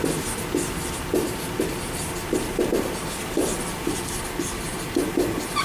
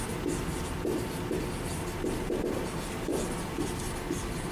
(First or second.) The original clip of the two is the second